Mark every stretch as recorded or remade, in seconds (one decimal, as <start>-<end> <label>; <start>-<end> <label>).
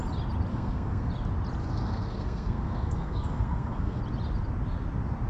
0.0-0.5 recorded; 0.5-1.1 remade; 1.1-1.6 recorded; 1.6-4.0 remade; 4.0-5.3 recorded